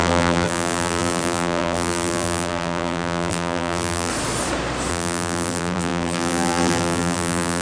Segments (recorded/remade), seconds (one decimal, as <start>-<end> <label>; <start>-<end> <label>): 0.0-4.1 remade; 4.1-4.9 recorded; 4.9-7.6 remade